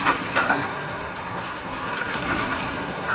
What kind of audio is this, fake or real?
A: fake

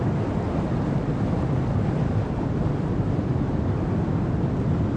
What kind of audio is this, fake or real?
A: real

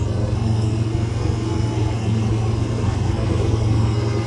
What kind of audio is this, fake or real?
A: fake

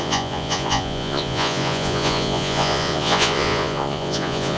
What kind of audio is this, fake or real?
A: fake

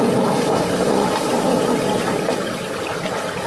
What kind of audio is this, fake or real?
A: real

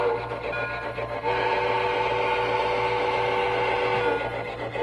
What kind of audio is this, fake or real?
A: real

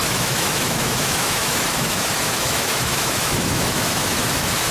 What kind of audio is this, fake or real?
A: fake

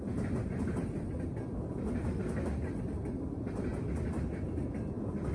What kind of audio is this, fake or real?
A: real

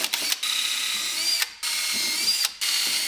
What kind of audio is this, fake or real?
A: real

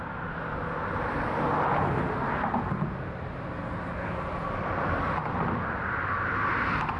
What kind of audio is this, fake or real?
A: real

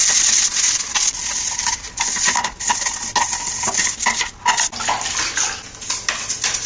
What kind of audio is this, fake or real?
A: real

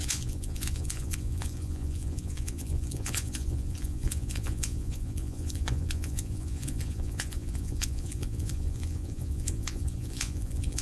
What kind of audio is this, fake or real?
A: fake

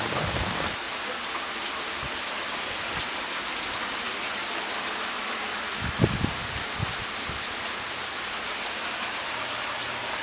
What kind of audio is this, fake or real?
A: real